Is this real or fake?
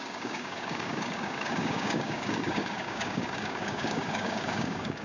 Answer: fake